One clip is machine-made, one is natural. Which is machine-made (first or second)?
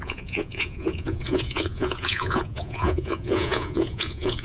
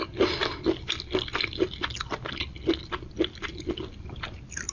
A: first